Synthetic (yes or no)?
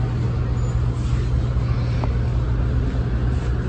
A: no